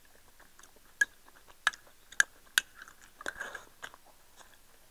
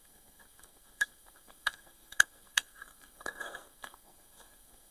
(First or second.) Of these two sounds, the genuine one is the first